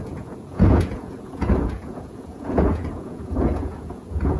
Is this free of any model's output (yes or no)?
no